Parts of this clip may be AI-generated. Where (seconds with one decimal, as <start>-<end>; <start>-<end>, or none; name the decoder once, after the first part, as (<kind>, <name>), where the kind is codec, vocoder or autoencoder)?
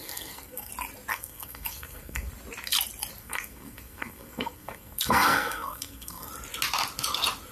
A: 0.0-0.7 (codec, SNAC); 1.1-2.3; 3.2-6.3